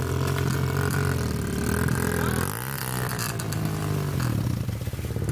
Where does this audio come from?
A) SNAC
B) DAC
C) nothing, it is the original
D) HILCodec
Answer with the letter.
C